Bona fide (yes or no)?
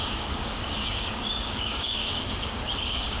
no